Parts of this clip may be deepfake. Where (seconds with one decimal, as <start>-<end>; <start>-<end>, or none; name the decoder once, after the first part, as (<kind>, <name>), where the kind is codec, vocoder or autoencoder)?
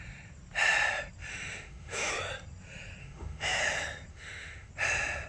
1.3-2.1 (autoencoder, DAC-VAE); 3.0-3.6; 4.1-4.7